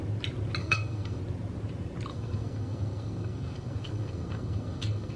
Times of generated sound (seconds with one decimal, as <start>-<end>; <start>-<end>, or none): 0.6-1.2; 2.1-5.2